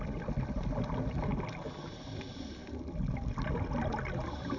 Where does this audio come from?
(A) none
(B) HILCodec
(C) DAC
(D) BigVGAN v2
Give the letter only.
A